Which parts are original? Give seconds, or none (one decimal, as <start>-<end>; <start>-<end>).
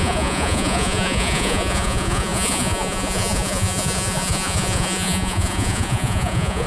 none